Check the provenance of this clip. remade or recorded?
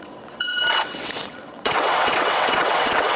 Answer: remade